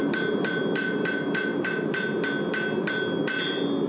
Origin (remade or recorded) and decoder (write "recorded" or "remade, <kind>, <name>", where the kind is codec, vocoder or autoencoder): recorded